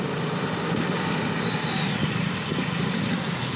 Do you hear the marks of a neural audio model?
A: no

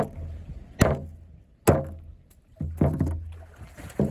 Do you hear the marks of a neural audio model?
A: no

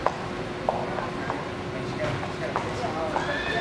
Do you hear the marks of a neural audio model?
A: no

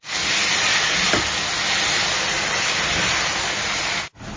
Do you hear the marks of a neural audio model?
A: no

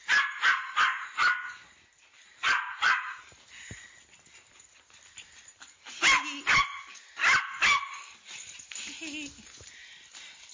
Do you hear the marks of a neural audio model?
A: no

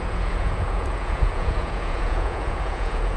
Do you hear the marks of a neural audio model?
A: yes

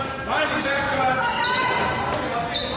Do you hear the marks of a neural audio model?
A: no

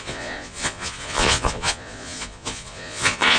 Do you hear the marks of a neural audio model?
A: yes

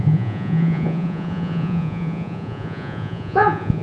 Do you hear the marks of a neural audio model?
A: yes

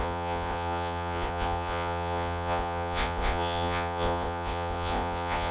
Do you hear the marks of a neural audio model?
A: yes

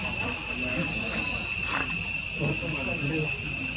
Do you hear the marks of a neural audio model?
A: no